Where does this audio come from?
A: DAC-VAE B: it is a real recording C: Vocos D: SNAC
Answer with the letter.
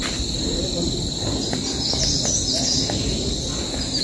B